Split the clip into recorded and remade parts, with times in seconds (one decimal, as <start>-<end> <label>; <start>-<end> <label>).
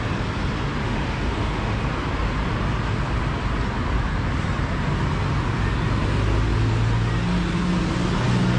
0.0-0.8 recorded; 0.8-1.8 remade; 1.8-8.6 recorded